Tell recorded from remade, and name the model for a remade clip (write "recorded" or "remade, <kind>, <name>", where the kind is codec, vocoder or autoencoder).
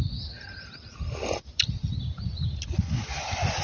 recorded